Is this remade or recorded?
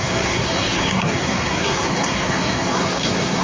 remade